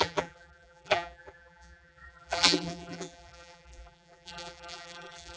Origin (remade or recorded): remade